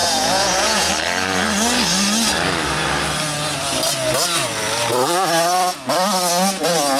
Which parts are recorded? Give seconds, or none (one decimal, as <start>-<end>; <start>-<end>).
0.9-7.0